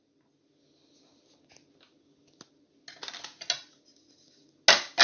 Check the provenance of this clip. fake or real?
real